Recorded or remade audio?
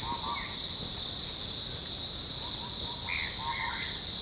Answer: recorded